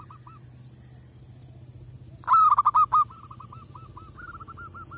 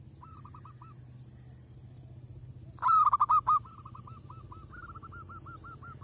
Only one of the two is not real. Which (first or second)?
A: second